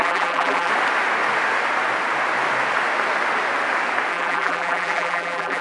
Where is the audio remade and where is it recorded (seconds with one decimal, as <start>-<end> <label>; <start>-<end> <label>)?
0.0-0.7 remade; 0.7-4.1 recorded; 4.1-5.6 remade

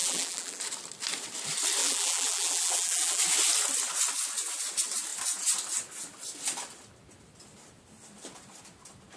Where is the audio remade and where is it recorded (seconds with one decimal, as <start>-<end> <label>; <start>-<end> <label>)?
0.0-0.6 remade; 0.6-1.8 recorded; 1.8-3.2 remade; 3.2-9.2 recorded

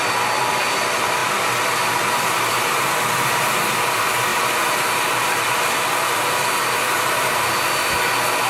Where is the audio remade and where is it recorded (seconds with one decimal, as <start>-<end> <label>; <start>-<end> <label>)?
0.0-8.5 recorded